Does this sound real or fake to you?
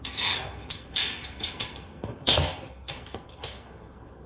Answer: fake